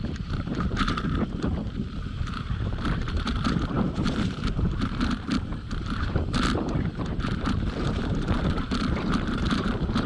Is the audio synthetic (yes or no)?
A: yes